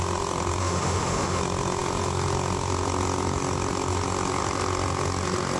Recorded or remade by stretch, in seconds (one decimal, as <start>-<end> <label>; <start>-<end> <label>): 0.0-0.6 recorded; 0.6-1.4 remade; 1.4-5.6 recorded